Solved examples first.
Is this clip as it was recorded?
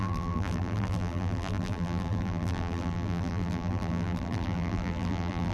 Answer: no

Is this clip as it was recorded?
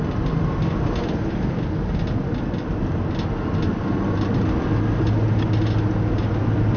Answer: yes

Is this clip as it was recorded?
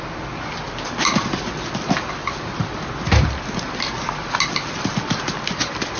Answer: yes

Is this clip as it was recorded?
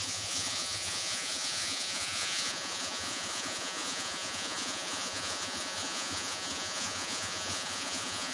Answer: no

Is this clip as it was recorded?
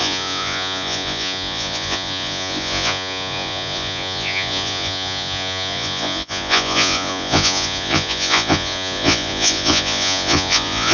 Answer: no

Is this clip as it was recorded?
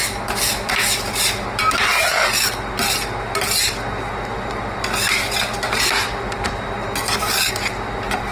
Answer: yes